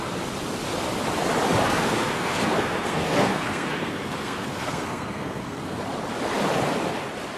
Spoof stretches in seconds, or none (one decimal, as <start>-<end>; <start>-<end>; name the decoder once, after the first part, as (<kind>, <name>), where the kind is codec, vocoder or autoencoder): 1.6-5.8 (codec, SNAC)